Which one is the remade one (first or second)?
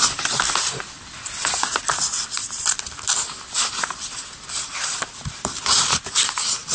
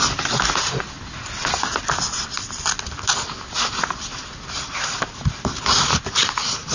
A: first